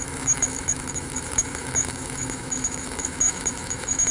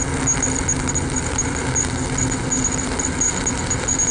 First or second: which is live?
second